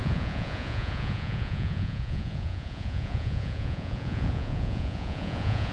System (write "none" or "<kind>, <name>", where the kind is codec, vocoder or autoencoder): vocoder, Vocos